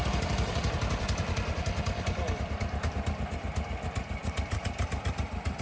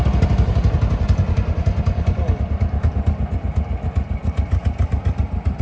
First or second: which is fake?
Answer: first